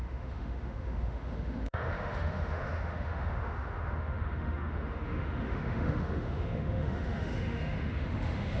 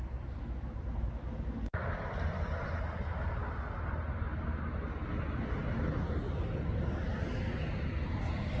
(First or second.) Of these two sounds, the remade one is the first